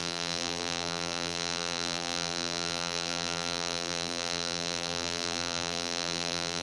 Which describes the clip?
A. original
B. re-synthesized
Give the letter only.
B